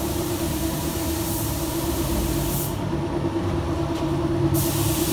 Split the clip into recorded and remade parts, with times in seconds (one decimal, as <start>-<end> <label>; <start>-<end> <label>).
0.0-2.2 remade; 2.2-5.1 recorded